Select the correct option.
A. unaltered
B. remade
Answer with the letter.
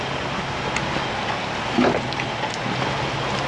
A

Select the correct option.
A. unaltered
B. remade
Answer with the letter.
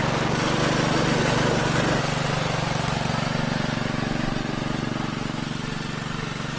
A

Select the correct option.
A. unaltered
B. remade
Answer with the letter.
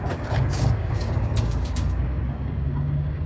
B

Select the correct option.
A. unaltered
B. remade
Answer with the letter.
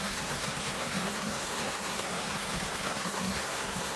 B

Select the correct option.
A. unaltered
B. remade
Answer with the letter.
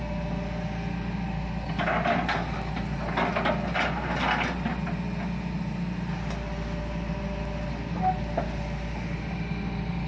A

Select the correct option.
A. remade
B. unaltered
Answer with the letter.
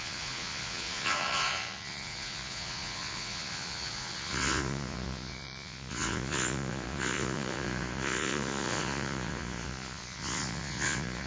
A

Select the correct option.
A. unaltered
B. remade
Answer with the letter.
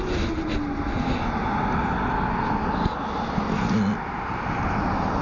A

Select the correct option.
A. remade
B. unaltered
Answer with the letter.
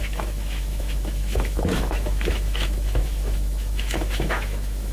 A